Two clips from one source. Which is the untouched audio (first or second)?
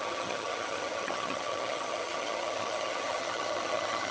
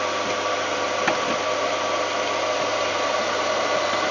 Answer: second